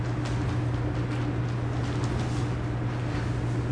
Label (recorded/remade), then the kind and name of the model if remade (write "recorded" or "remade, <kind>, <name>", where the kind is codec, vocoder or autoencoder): recorded